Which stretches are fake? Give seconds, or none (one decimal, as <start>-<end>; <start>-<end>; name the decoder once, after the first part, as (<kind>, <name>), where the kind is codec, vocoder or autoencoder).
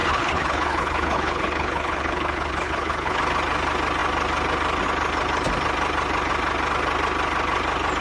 0.0-3.2 (codec, HILCodec)